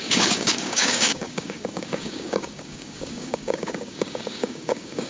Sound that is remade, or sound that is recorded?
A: remade